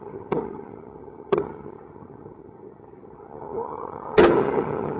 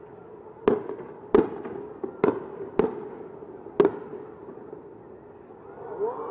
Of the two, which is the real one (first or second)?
second